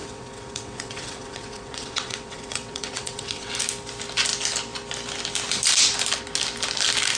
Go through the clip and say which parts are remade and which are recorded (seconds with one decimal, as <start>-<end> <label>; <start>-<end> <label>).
0.0-3.5 remade; 3.5-7.2 recorded